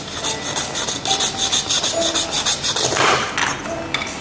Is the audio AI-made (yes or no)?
no